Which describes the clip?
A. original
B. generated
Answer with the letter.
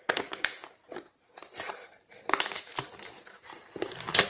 A